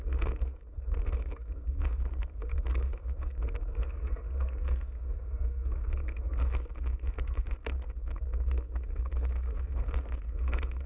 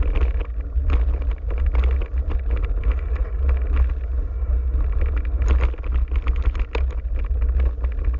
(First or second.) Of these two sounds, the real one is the second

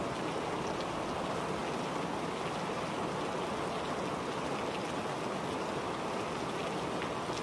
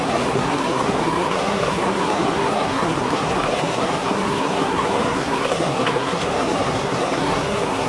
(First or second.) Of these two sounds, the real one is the first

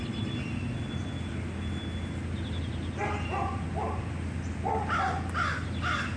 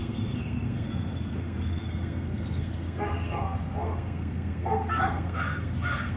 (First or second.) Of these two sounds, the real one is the first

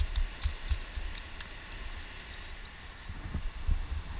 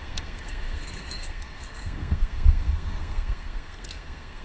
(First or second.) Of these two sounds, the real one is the first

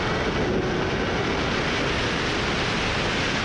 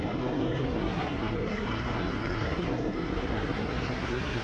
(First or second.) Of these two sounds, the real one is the first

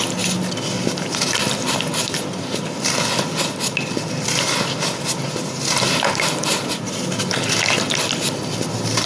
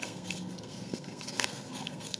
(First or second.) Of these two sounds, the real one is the first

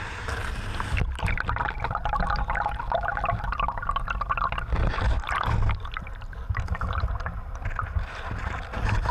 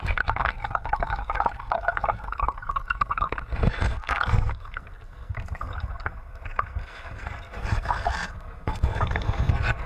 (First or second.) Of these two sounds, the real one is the first